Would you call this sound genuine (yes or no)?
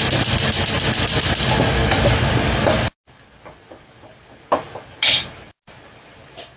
yes